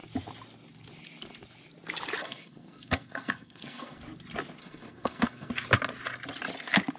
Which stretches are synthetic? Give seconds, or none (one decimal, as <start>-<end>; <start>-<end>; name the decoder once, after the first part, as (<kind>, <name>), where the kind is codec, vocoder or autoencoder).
2.2-4.0 (codec, SNAC); 4.6-5.5